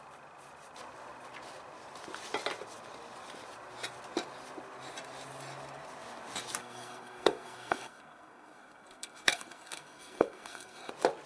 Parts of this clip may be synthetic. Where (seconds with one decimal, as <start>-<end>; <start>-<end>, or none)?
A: 6.6-10.9